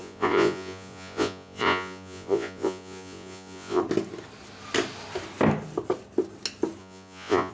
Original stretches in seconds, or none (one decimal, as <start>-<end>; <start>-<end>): 3.8-6.8